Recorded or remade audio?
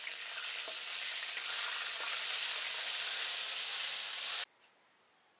recorded